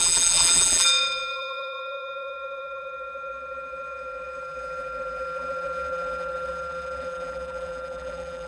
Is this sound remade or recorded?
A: remade